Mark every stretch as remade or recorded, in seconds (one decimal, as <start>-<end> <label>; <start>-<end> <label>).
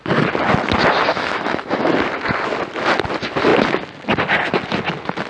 0.0-1.1 recorded; 1.1-1.9 remade; 1.9-5.3 recorded